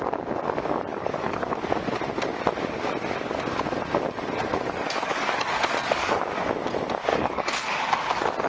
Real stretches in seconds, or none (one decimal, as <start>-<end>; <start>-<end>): 0.0-0.9; 1.5-4.5; 6.2-7.1; 7.9-8.5